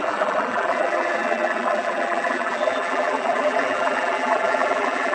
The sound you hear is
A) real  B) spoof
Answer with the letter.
B